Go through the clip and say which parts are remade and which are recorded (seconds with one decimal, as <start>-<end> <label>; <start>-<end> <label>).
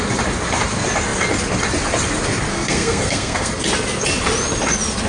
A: 0.0-2.5 recorded; 2.5-3.5 remade; 3.5-5.1 recorded